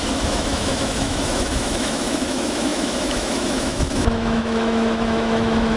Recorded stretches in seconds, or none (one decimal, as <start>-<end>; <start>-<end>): none